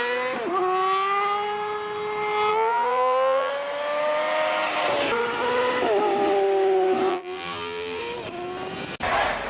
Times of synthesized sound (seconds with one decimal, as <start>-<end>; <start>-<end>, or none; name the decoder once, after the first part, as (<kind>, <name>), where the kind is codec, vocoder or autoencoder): 2.5-3.5 (vocoder, BigVGAN v2); 7.1-8.0